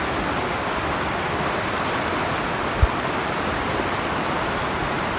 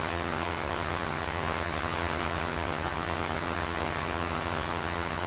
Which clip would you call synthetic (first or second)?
second